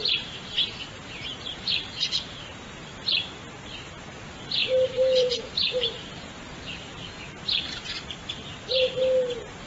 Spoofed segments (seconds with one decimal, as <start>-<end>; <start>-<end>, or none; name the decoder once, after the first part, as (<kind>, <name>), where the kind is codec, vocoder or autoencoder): 1.5-2.9 (vocoder, BigVGAN v2); 4.6-8.9

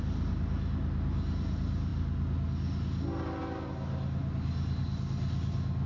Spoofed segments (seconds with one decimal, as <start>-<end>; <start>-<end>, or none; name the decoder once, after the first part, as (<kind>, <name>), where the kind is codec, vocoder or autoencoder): none